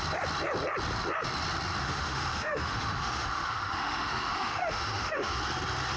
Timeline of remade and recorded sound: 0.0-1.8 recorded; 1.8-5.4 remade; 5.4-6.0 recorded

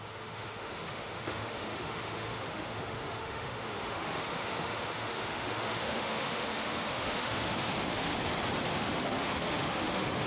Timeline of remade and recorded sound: 0.0-8.1 remade; 8.1-8.7 recorded; 8.7-10.3 remade

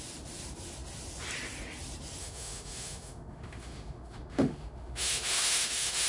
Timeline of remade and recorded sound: 0.0-2.2 recorded; 2.2-6.1 remade

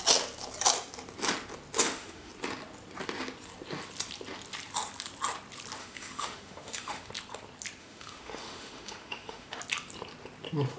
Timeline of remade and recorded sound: 0.0-1.8 recorded; 1.8-2.3 remade; 2.3-5.8 recorded; 5.8-7.1 remade; 7.1-7.8 recorded; 7.8-9.6 remade; 9.6-10.8 recorded

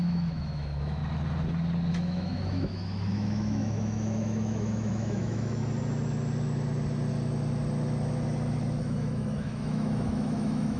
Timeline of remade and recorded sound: 0.0-1.0 remade; 1.0-1.9 recorded; 1.9-5.6 remade; 5.6-8.8 recorded; 8.8-10.8 remade

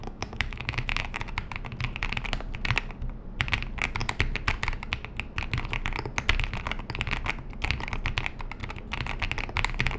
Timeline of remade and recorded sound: 0.0-1.2 remade; 1.2-10.0 recorded

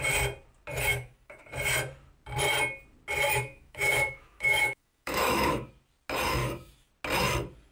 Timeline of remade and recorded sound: 0.0-0.9 recorded; 0.9-1.5 remade; 1.5-3.3 recorded; 3.3-5.7 remade; 5.7-6.4 recorded; 6.4-6.9 remade; 6.9-7.7 recorded

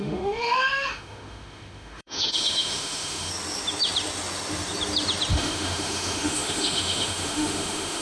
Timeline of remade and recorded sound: 0.0-3.3 remade; 3.3-5.3 recorded; 5.3-8.0 remade